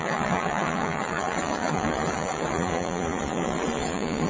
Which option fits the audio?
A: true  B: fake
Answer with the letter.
B